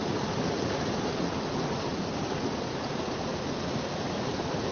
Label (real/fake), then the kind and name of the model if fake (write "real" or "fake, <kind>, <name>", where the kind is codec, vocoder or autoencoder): fake, vocoder, Vocos